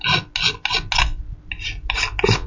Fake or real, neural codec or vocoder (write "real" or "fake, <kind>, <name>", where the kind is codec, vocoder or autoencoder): real